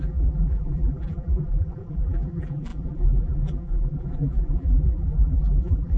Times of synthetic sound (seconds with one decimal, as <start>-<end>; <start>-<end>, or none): 0.0-6.0